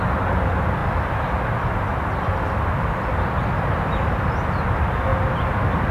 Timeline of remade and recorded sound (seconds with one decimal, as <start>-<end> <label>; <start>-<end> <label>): 0.0-5.9 recorded